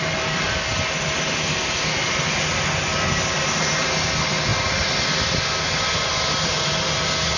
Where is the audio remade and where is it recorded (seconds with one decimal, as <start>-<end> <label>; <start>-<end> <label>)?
0.0-7.4 recorded